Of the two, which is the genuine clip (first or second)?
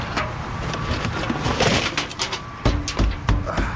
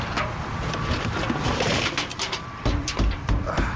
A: first